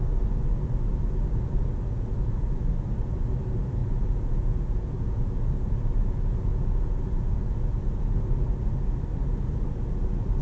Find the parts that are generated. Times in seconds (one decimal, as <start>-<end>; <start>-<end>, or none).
1.9-2.6; 3.8-8.2